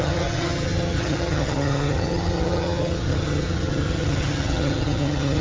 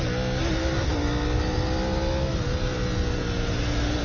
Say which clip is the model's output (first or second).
first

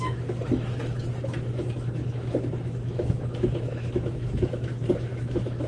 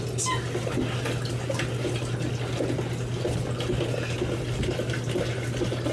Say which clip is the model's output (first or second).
first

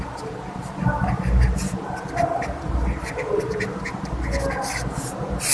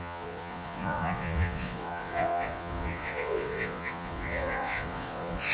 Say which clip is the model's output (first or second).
second